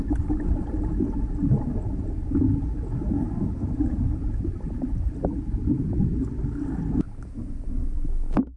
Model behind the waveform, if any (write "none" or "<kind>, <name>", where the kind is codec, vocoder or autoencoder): none